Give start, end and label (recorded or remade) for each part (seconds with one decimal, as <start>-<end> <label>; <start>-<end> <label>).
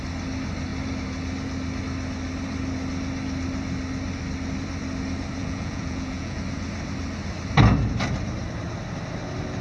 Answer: 0.0-5.4 recorded; 5.4-6.4 remade; 6.4-9.6 recorded